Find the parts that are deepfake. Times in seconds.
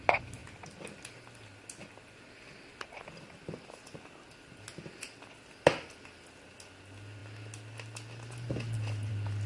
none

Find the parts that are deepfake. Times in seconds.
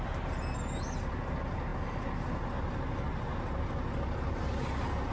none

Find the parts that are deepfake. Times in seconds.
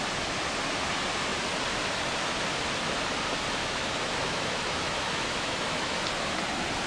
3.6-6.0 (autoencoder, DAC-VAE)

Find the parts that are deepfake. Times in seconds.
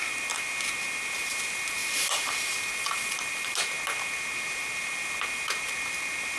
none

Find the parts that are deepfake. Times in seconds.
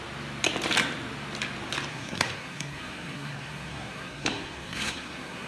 1.9-5.5 (codec, SNAC)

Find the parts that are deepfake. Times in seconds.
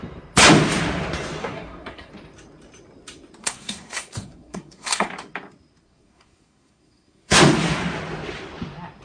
1.4-2.1 (codec, SNAC); 3.4-5.1; 5.8-7.4